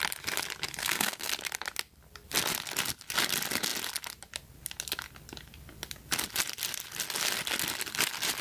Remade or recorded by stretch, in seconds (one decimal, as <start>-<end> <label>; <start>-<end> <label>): 0.0-0.8 recorded; 0.8-1.3 remade; 1.3-8.4 recorded